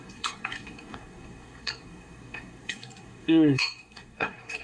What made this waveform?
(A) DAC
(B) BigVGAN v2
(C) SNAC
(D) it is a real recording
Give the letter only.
C